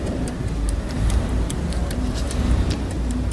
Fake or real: fake